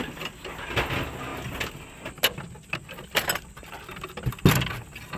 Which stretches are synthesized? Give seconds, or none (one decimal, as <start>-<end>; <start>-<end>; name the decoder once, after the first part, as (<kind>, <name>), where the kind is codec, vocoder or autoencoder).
none